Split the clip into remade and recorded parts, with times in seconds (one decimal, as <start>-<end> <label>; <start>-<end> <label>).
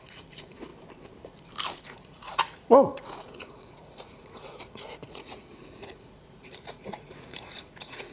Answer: 0.0-0.7 remade; 0.7-1.8 recorded; 1.8-8.1 remade